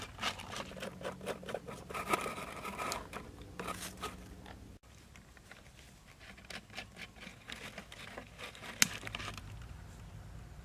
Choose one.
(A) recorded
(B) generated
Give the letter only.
A